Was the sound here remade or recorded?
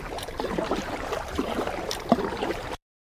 remade